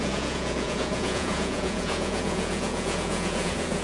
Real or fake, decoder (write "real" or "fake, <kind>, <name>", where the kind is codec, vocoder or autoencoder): fake, vocoder, Vocos